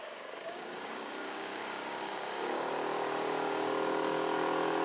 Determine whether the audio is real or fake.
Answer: fake